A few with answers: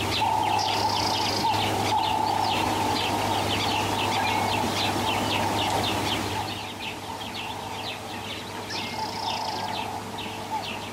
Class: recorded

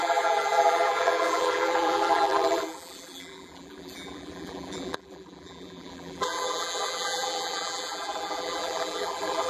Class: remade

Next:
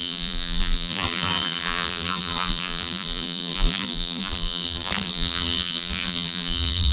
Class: remade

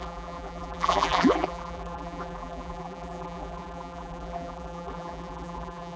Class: remade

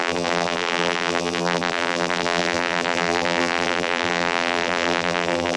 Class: remade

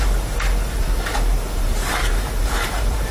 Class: remade